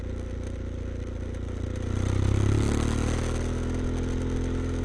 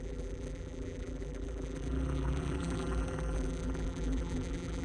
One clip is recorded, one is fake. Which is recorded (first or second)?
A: first